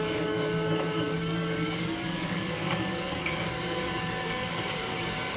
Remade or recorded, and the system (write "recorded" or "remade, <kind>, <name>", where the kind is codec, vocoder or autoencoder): remade, codec, DAC